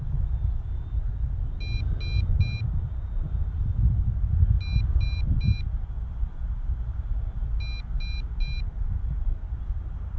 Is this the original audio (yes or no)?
yes